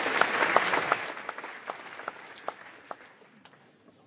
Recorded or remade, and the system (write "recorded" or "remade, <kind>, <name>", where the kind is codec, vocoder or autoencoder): recorded